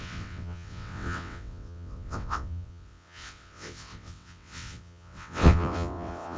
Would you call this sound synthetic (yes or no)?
yes